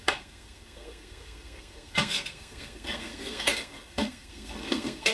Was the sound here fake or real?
fake